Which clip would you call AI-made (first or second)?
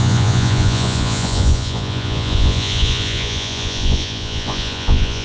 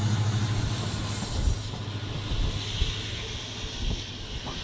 first